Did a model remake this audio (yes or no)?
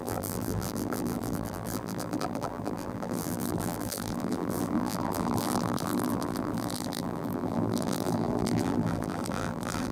yes